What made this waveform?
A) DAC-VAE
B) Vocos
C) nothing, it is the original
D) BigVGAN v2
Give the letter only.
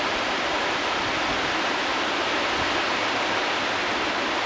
C